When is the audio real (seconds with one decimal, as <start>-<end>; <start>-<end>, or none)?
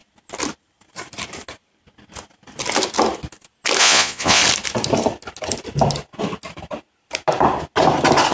0.0-3.8; 4.4-8.3